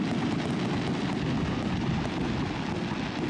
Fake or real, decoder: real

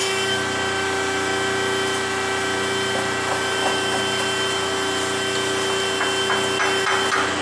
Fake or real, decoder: real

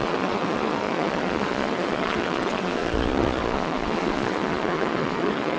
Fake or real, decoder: fake, vocoder, Vocos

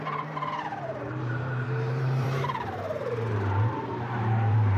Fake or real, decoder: fake, vocoder, BigVGAN v2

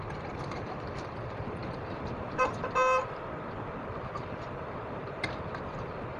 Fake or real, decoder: fake, vocoder, BigVGAN v2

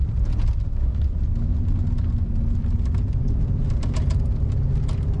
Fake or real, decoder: real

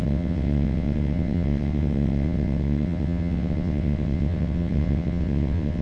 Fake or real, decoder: fake, vocoder, WaveNeXt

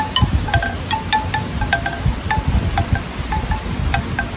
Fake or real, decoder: real